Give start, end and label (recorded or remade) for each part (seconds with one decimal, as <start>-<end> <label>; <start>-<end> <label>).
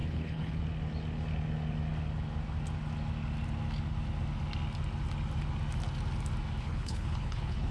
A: 0.0-0.6 remade; 0.6-6.6 recorded; 6.6-7.7 remade